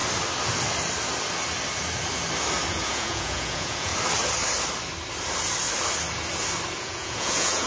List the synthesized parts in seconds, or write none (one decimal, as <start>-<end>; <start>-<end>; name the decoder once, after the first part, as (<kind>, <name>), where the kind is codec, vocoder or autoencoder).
2.7-3.9 (vocoder, Vocos); 6.8-7.7